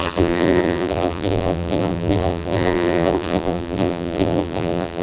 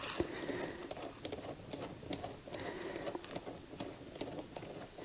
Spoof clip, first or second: first